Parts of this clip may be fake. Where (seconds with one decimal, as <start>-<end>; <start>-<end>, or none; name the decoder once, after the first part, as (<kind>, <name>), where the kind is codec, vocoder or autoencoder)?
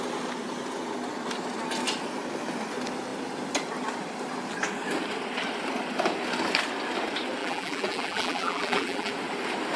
7.4-9.1 (vocoder, BigVGAN v2)